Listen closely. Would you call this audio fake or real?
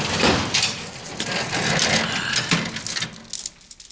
real